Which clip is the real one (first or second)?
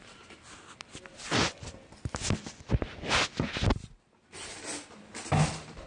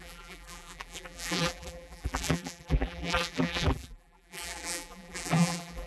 first